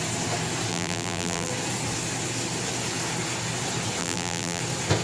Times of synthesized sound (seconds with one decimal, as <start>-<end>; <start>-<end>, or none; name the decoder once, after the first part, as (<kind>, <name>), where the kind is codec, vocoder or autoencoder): 0.7-1.5 (vocoder, BigVGAN v2); 4.0-4.6